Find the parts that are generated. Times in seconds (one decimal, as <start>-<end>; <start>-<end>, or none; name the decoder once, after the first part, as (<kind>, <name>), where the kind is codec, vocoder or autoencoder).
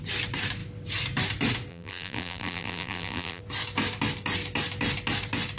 1.7-3.4 (vocoder, BigVGAN v2)